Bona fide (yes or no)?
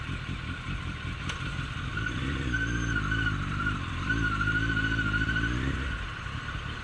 no